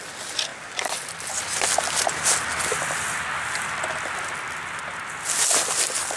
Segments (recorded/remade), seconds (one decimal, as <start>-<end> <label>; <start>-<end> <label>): 0.0-0.5 recorded; 0.5-1.3 remade; 1.3-6.2 recorded